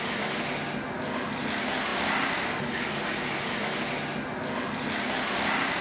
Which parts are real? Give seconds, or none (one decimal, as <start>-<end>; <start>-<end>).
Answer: 0.0-5.8